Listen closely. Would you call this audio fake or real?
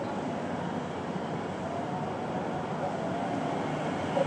real